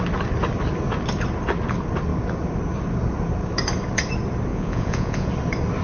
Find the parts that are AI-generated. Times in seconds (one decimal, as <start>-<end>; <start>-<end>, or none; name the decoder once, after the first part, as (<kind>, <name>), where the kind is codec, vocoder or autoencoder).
4.5-5.3 (vocoder, Vocos)